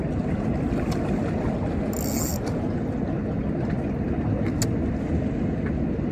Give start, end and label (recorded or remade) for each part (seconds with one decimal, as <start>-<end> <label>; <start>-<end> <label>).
0.0-6.1 recorded